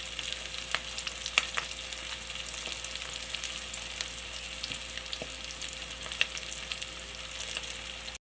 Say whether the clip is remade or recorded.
recorded